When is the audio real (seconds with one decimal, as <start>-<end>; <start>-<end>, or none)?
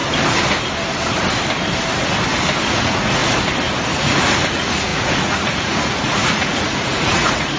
0.0-2.7; 3.2-4.0